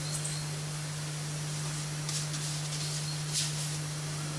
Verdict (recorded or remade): recorded